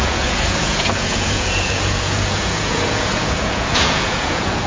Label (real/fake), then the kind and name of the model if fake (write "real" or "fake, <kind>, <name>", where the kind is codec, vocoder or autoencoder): fake, vocoder, Vocos